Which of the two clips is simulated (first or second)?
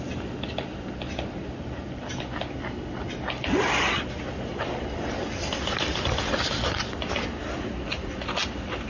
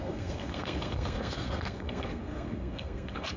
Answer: second